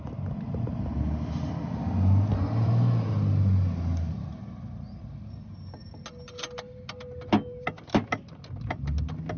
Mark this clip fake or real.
real